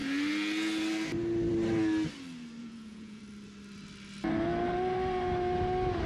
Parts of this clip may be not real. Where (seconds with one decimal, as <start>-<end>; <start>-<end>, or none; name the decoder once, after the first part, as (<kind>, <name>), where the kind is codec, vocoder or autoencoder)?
2.6-3.2 (vocoder, Vocos)